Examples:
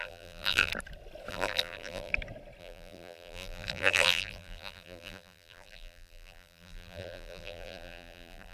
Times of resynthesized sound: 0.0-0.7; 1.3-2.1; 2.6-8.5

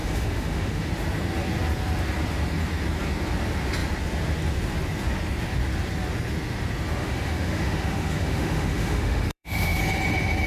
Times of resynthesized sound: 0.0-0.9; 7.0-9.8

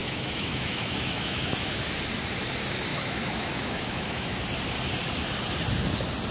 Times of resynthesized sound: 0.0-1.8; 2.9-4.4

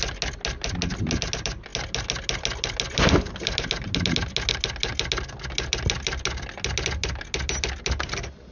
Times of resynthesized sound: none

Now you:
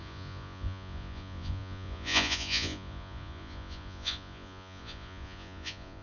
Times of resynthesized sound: 0.0-6.0

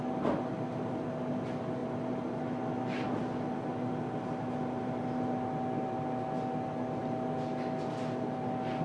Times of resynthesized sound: none